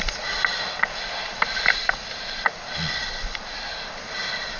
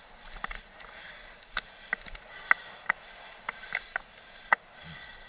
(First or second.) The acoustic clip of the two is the second